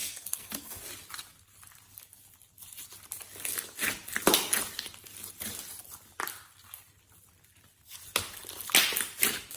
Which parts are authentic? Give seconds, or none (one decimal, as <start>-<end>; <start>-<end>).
0.8-9.6